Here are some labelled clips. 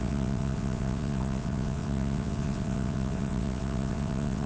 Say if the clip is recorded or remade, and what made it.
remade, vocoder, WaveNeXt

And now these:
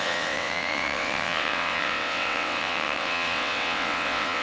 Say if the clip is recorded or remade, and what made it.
remade, vocoder, WaveNeXt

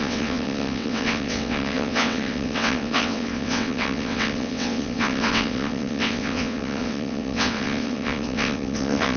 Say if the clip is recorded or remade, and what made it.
remade, vocoder, WaveNeXt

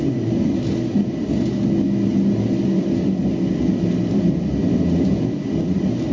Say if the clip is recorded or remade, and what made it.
recorded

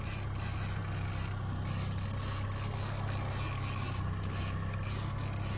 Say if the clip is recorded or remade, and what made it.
recorded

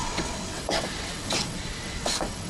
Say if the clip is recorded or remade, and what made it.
remade, vocoder, WaveNeXt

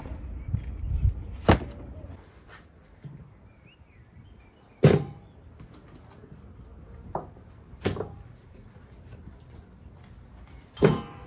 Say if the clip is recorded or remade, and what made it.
recorded